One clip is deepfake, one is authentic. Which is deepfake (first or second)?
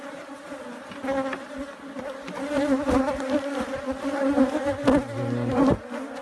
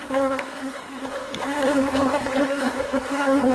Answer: second